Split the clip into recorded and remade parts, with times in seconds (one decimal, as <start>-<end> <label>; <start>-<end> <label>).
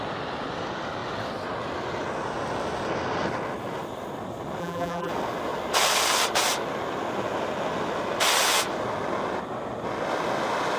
0.0-4.6 recorded; 4.6-5.1 remade; 5.1-10.8 recorded